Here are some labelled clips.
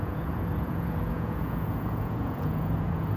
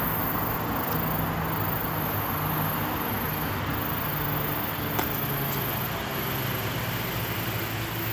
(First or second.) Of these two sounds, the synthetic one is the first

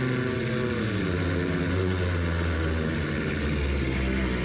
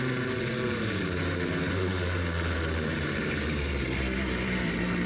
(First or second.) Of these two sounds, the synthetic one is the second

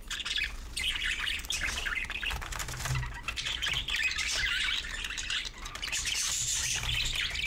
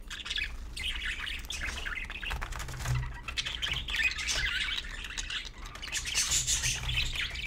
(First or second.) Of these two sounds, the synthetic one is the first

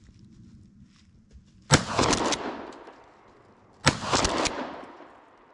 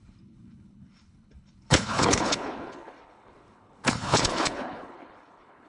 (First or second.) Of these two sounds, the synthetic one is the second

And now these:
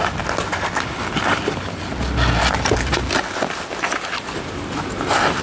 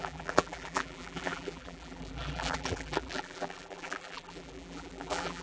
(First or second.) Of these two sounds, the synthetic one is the second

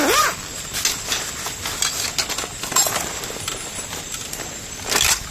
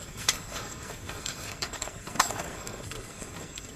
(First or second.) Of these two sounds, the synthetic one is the second